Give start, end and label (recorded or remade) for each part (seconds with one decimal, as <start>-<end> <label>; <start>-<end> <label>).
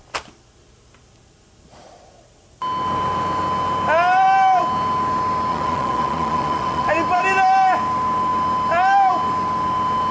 0.0-5.5 recorded; 5.5-6.9 remade; 6.9-10.1 recorded